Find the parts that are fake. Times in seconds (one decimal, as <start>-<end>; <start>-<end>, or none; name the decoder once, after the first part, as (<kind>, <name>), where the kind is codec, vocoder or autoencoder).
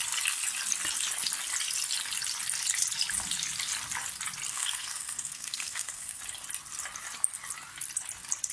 4.5-6.2 (codec, SNAC)